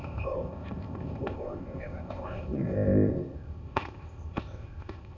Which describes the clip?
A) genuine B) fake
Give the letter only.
B